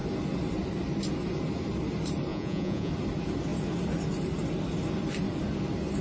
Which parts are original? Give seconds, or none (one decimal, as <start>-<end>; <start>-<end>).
0.0-2.3; 2.9-6.0